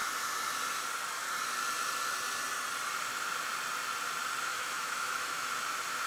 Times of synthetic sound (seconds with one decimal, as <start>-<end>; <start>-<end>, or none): 4.5-5.5